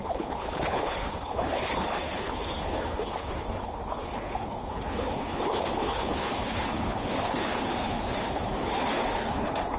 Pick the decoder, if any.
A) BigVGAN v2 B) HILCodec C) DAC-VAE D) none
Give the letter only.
B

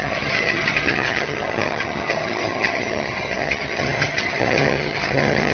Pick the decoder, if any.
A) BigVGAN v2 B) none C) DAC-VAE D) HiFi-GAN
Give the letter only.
D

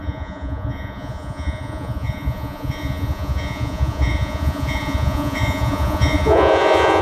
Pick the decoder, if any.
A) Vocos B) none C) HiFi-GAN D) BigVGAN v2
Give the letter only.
A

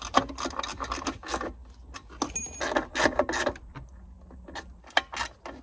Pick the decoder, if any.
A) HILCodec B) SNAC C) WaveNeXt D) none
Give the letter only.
D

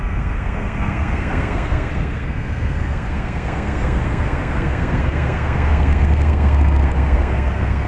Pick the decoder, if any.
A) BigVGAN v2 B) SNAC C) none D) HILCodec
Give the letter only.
B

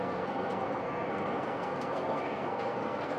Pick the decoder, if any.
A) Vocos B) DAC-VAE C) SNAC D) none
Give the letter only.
C